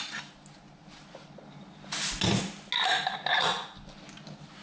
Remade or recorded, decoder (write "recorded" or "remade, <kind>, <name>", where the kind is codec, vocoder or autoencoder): recorded